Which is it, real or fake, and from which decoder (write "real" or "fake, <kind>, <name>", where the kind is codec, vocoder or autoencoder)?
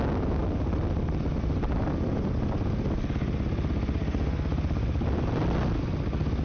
real